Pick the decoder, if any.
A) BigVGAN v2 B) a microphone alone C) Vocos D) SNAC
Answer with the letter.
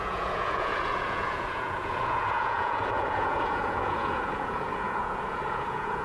C